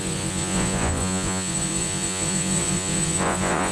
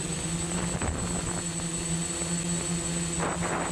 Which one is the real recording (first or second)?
second